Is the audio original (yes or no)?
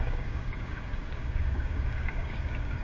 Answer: no